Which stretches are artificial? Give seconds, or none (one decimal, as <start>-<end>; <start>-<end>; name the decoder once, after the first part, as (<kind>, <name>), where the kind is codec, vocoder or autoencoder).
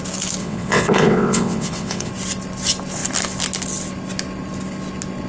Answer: 0.4-2.1 (vocoder, WaveNeXt)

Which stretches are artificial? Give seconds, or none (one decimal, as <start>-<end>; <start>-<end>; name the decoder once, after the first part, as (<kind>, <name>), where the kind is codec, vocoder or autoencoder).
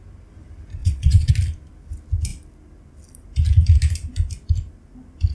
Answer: 0.8-1.3 (vocoder, WaveNeXt)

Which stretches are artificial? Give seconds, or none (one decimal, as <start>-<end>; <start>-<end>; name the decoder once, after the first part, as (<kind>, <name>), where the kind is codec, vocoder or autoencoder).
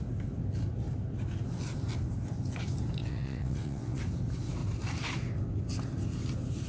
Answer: 3.0-4.0 (vocoder, WaveNeXt)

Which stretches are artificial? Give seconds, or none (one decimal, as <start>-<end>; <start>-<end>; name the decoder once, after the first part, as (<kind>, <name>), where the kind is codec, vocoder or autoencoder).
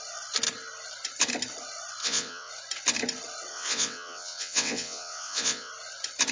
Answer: 2.0-2.5 (vocoder, WaveNeXt); 3.5-5.7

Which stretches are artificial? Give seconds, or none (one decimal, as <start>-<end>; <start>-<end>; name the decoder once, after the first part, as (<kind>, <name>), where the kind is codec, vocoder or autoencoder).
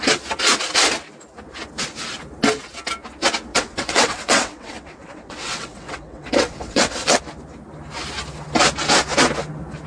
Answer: 3.5-7.2 (vocoder, WaveNeXt)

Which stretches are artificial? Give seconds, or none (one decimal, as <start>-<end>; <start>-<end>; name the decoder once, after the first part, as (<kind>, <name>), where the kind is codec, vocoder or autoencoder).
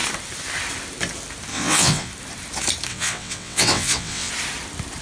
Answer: 1.5-2.1 (vocoder, WaveNeXt); 2.9-4.3